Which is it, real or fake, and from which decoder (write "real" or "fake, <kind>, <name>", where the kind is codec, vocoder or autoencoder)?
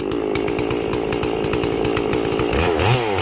real